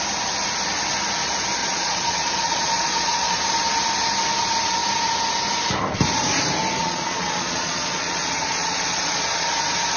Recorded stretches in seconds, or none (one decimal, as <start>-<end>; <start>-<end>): 0.0-1.6; 3.4-6.8; 9.5-10.0